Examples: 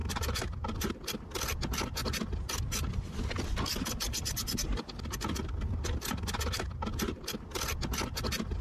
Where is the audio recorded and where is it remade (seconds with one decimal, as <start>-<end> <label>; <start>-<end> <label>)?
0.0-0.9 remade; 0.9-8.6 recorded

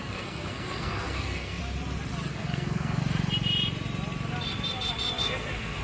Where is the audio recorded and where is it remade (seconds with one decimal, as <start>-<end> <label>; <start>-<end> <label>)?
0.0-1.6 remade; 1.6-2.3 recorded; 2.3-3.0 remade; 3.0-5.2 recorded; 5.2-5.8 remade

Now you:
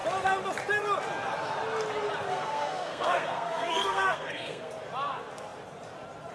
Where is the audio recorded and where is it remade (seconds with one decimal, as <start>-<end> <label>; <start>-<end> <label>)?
0.0-2.3 recorded; 2.3-4.7 remade; 4.7-6.3 recorded

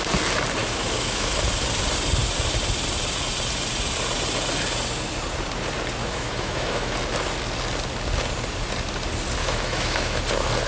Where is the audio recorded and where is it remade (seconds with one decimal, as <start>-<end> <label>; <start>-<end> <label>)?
0.0-0.6 recorded; 0.6-1.3 remade; 1.3-6.0 recorded; 6.0-6.9 remade; 6.9-9.4 recorded; 9.4-10.2 remade; 10.2-10.7 recorded

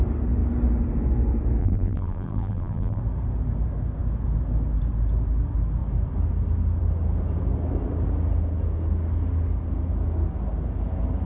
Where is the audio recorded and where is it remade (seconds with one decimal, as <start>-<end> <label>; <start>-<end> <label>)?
0.0-1.6 recorded; 1.6-3.0 remade; 3.0-11.2 recorded

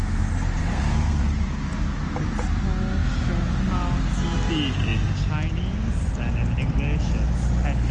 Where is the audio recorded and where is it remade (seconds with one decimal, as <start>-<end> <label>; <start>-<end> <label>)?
0.0-0.6 recorded; 0.6-1.2 remade; 1.2-7.9 recorded

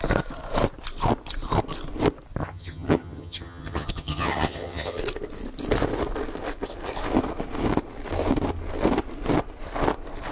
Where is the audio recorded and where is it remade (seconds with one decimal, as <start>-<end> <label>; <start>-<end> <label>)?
0.0-2.4 recorded; 2.4-5.0 remade; 5.0-10.3 recorded

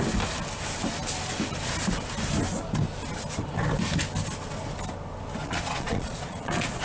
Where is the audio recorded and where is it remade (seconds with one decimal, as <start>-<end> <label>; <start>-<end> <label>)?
0.0-5.4 recorded; 5.4-6.8 remade